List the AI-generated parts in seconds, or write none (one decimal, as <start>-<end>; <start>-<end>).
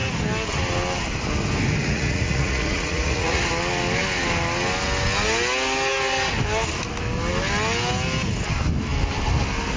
1.8-3.4